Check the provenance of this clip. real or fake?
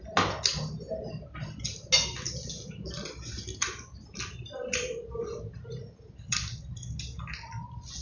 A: real